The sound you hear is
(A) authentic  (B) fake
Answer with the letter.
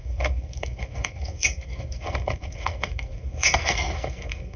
B